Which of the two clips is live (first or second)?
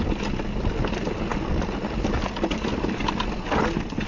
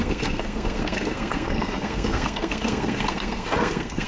first